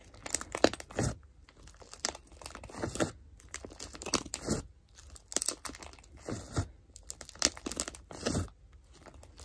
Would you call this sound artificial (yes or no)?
no